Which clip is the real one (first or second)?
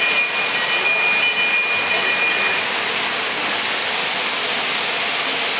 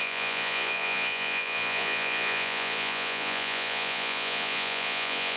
first